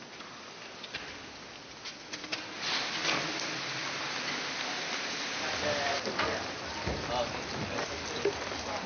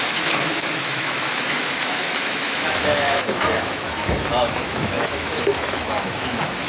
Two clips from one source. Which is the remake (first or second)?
second